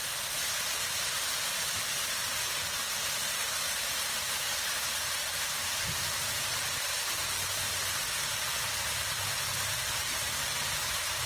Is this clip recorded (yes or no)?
no